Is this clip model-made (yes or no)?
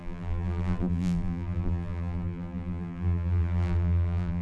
yes